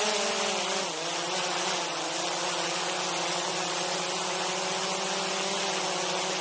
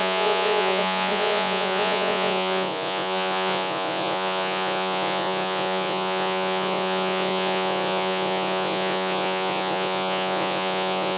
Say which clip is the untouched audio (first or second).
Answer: first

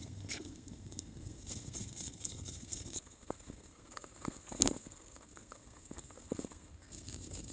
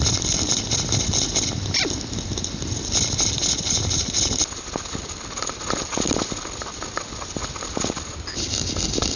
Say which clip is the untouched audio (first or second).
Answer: second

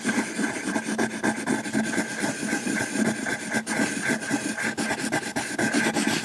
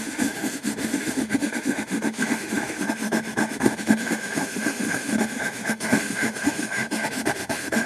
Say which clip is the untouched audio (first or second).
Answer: first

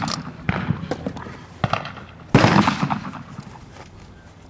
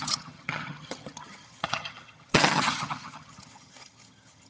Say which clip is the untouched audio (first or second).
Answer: first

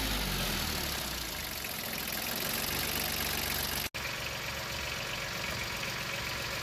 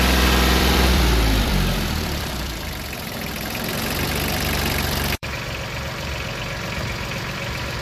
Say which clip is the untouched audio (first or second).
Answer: first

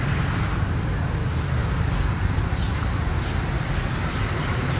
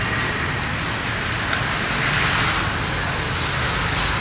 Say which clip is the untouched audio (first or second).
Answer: second